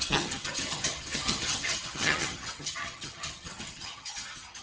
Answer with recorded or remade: remade